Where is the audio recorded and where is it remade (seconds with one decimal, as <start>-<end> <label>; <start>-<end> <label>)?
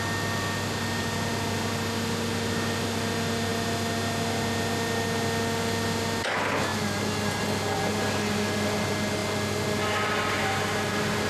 0.0-11.3 recorded